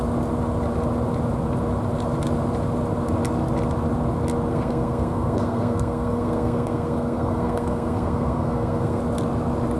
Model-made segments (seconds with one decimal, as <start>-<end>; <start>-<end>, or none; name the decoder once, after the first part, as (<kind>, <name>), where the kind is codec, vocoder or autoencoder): 4.5-9.0 (codec, SNAC)